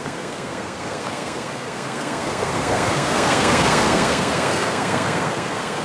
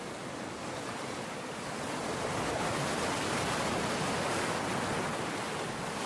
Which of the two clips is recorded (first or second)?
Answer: second